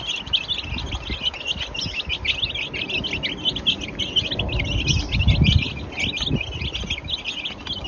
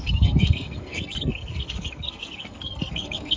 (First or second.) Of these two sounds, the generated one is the second